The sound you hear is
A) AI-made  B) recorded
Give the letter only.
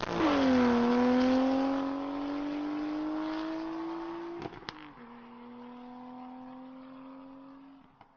B